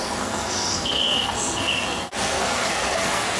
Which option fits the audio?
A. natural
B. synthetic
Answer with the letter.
B